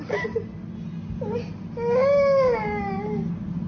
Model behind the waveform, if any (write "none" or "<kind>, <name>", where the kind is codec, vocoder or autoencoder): none